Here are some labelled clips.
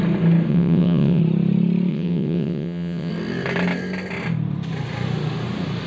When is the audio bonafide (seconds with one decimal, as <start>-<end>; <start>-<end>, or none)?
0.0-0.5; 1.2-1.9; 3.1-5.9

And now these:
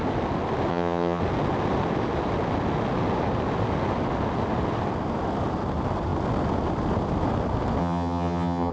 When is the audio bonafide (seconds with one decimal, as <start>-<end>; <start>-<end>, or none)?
0.0-0.7; 1.2-7.8

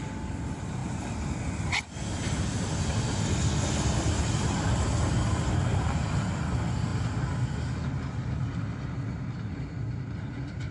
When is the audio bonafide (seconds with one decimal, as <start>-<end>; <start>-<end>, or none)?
0.0-5.7; 6.2-10.7

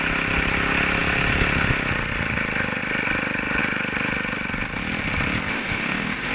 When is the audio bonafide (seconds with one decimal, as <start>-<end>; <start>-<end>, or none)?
0.0-5.5

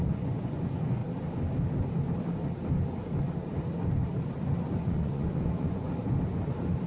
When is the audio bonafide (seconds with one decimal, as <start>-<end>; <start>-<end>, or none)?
1.0-4.7; 6.0-6.9

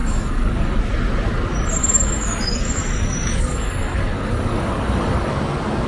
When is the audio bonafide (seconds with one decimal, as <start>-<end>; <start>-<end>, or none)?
0.8-1.8; 5.3-5.9